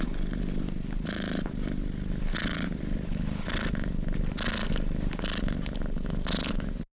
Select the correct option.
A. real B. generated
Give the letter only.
A